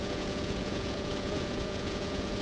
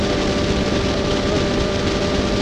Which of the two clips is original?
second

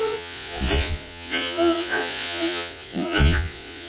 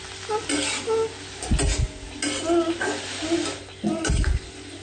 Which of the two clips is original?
second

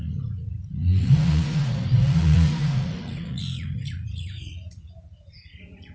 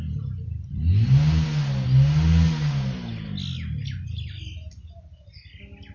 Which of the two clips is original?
second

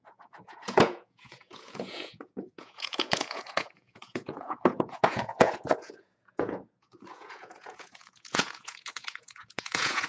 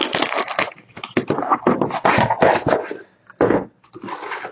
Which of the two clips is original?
second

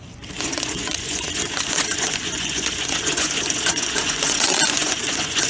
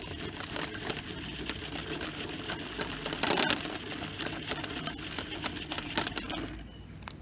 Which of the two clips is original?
second